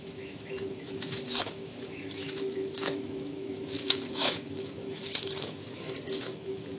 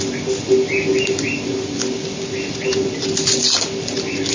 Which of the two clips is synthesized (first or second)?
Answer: first